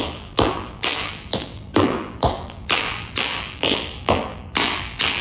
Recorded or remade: remade